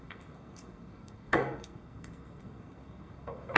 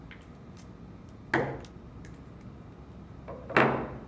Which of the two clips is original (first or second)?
second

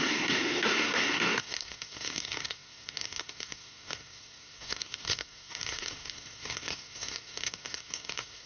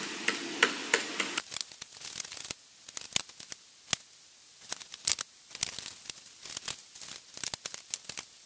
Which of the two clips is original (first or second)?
second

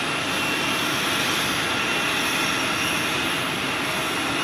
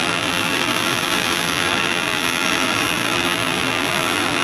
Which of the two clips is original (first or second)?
first